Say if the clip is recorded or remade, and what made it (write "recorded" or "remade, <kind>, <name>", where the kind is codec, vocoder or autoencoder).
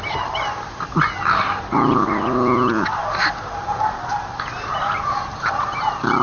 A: recorded